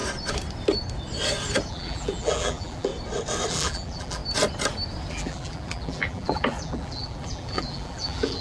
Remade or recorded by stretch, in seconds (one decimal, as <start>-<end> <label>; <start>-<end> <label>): 0.0-1.7 recorded; 1.7-2.9 remade; 2.9-3.5 recorded; 3.5-4.2 remade; 4.2-5.1 recorded; 5.1-8.4 remade